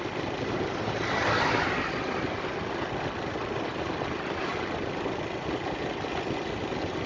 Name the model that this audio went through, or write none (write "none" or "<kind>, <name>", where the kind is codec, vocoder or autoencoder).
none